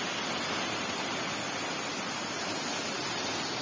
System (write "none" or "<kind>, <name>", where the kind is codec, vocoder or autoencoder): none